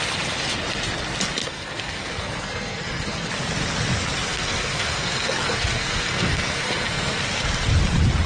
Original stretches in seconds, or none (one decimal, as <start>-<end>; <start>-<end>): 0.0-1.4; 3.3-4.3; 7.2-8.3

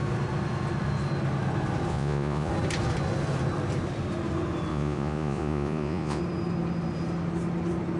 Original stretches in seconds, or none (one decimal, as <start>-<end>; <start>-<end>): 0.0-1.9; 2.5-4.7; 6.2-8.0

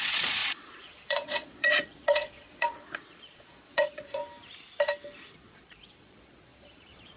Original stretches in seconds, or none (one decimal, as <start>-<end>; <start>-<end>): 4.2-5.3

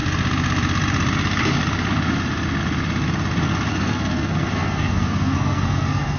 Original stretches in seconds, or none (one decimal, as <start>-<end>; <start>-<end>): 0.0-3.7